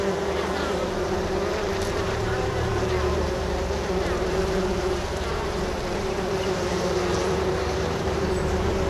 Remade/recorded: remade